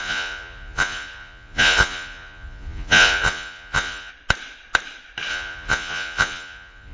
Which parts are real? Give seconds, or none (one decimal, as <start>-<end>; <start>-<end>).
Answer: 4.1-5.3